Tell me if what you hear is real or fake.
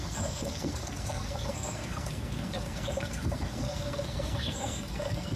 fake